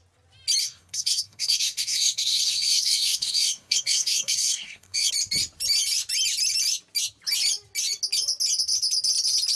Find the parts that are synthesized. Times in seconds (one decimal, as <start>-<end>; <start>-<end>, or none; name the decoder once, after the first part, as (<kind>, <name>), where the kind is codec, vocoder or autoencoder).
0.6-5.1 (codec, SNAC)